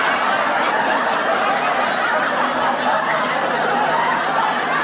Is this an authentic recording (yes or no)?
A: yes